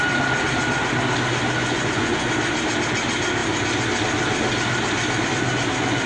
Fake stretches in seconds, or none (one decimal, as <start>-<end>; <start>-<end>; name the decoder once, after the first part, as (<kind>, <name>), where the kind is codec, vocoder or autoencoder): 1.6-2.3 (vocoder, Vocos)